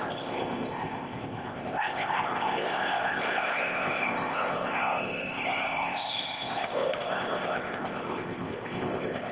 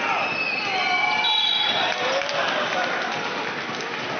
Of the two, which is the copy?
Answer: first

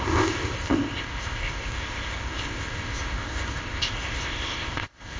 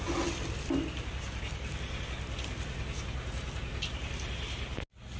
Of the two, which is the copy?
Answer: first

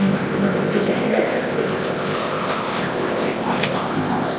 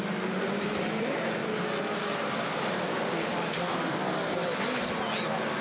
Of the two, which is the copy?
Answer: first